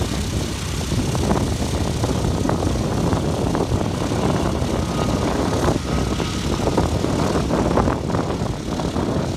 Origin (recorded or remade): recorded